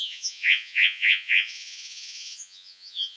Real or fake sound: fake